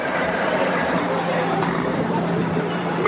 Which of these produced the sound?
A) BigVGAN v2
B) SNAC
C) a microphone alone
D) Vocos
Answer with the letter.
A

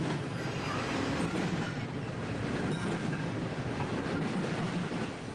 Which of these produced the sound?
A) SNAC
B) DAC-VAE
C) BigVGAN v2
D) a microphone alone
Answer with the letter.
C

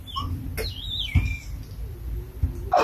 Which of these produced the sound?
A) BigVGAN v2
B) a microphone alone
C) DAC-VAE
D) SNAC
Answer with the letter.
B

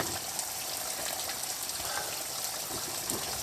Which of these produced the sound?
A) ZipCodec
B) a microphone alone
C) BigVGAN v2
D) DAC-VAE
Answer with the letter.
B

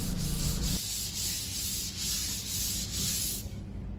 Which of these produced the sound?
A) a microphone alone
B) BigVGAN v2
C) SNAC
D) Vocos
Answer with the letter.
A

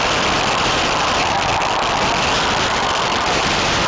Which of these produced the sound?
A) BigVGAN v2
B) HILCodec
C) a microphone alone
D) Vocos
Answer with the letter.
A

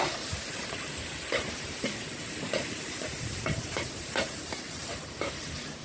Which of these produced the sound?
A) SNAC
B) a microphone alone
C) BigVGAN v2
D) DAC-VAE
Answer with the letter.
C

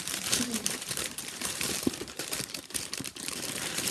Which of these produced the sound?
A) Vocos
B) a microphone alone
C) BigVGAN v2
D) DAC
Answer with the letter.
C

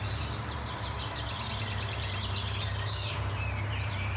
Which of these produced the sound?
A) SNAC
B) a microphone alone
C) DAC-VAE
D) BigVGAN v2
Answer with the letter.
D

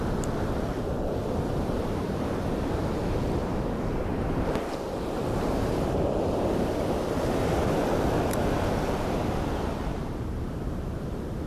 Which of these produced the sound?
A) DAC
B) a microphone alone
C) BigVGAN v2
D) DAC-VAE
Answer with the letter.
C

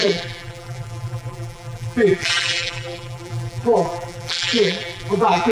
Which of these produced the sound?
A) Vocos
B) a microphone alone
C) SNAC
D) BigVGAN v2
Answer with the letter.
D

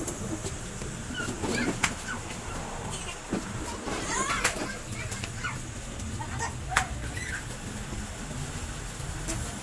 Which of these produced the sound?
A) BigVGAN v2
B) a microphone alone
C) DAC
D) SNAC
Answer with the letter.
B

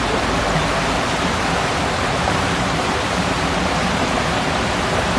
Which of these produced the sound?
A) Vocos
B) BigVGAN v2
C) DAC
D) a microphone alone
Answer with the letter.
B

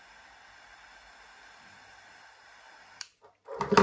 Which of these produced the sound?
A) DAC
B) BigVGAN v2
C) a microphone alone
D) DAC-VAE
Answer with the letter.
C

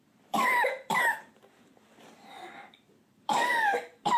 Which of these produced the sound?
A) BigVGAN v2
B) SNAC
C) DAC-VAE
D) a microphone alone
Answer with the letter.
A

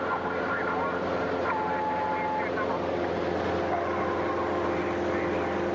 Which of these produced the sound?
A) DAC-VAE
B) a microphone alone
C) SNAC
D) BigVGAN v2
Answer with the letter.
B